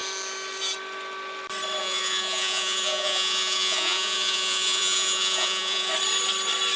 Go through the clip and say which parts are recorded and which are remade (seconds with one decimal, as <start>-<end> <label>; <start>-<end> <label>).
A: 0.0-1.8 recorded; 1.8-5.9 remade; 5.9-6.8 recorded